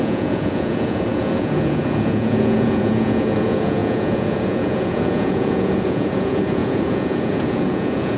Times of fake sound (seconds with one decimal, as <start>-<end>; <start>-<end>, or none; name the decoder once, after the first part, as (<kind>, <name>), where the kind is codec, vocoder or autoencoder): 0.0-8.2 (vocoder, Vocos)